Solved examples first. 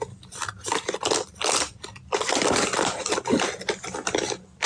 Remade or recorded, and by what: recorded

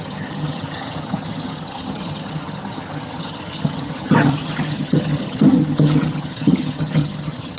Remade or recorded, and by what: remade, vocoder, HiFi-GAN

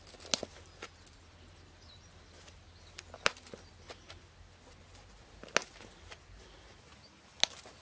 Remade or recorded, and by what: recorded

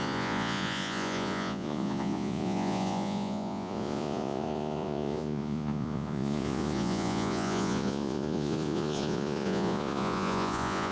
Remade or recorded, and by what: remade, vocoder, Vocos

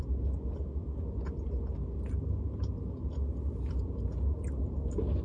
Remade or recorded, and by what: recorded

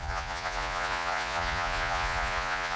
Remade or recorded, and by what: remade, vocoder, Vocos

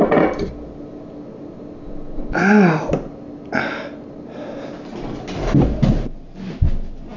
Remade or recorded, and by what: recorded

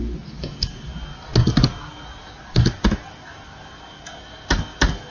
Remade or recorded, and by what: recorded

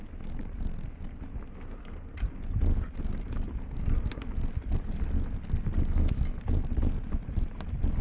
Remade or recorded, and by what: recorded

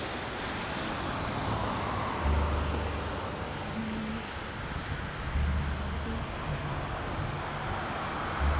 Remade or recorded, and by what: recorded